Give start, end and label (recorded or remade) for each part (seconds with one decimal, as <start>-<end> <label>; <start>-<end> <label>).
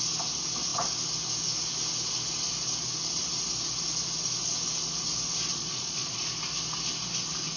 0.0-5.5 recorded; 5.5-6.2 remade; 6.2-7.6 recorded